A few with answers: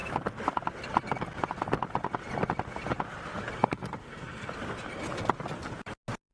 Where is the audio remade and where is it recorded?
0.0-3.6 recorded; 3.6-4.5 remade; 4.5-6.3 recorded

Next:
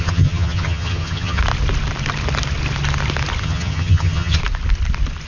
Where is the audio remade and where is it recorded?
0.0-1.4 remade; 1.4-3.4 recorded; 3.4-4.4 remade; 4.4-5.3 recorded

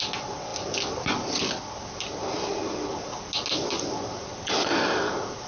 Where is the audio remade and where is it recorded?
0.0-5.5 recorded

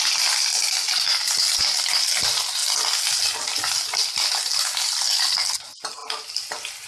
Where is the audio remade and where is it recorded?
0.0-6.9 recorded

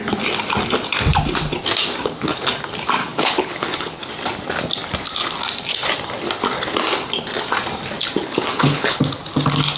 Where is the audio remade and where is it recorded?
0.0-3.0 recorded; 3.0-4.1 remade; 4.1-8.2 recorded; 8.2-9.0 remade; 9.0-9.8 recorded

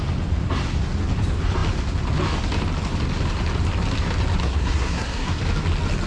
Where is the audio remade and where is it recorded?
0.0-4.4 recorded; 4.4-5.4 remade; 5.4-6.1 recorded

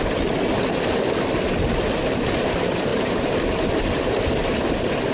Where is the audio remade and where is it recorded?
0.0-2.9 recorded; 2.9-4.0 remade; 4.0-5.1 recorded